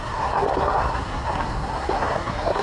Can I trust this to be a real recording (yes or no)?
no